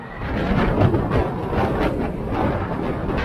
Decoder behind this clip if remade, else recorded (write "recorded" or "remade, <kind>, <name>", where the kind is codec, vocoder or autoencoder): recorded